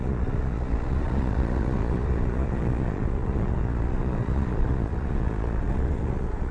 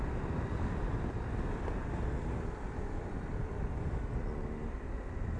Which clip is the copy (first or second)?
first